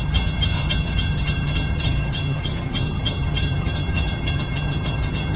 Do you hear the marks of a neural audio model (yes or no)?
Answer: yes